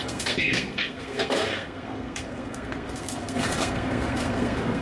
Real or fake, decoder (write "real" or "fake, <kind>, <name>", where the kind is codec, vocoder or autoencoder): fake, codec, SNAC